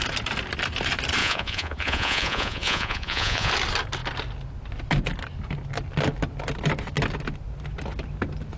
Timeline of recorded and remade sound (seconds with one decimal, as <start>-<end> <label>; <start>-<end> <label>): 0.0-1.2 recorded; 1.2-3.5 remade; 3.5-8.6 recorded